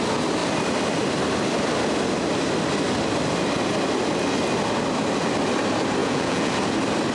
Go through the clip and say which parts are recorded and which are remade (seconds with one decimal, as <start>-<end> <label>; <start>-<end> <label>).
0.0-6.0 recorded; 6.0-6.5 remade; 6.5-7.1 recorded